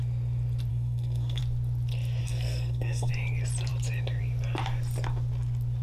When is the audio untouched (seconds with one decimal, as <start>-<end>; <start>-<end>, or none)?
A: 0.0-0.7; 1.4-2.2; 3.1-5.8